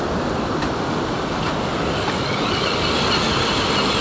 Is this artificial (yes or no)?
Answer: no